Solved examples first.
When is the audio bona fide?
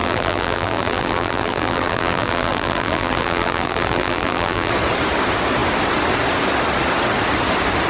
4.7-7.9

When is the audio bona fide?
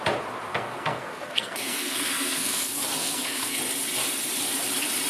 0.0-0.5; 3.6-5.1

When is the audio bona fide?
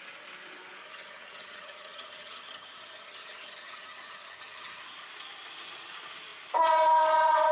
0.0-0.8; 4.8-7.5